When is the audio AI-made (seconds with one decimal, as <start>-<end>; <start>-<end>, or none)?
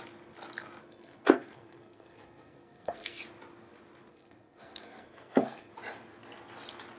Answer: 0.8-3.2; 4.1-5.7